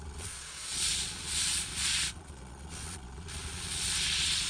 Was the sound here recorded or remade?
remade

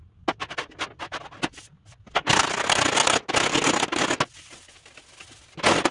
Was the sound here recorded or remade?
recorded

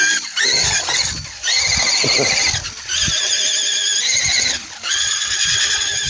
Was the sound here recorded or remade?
recorded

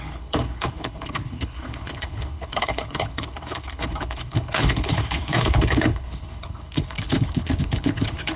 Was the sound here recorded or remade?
remade